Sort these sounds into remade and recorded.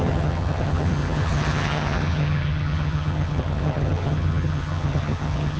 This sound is remade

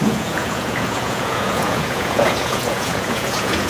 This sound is remade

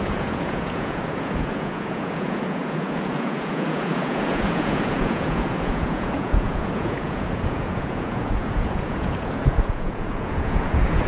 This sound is remade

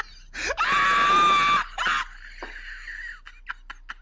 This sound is recorded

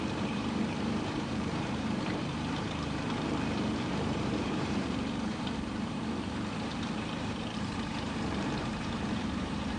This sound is remade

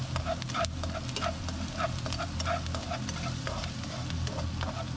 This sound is recorded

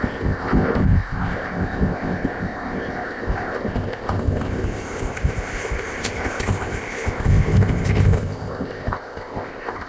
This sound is remade